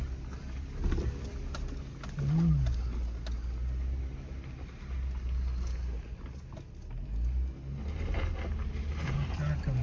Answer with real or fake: real